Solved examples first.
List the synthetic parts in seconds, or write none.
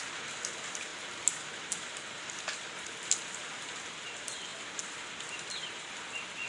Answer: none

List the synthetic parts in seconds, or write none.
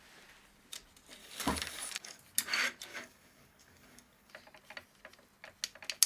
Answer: 1.2-2.2 (codec, DAC); 2.9-4.3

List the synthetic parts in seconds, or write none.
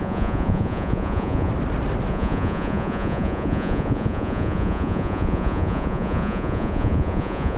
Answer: 0.0-1.5 (vocoder, Vocos); 2.1-7.6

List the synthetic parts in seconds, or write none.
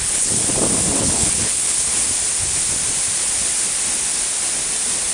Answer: 0.0-0.4 (codec, HILCodec); 1.0-1.9